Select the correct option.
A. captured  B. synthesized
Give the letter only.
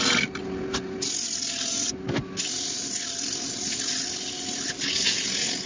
A